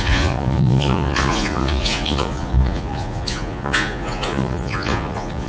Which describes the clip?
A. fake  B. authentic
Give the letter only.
A